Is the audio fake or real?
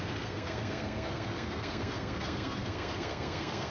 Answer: fake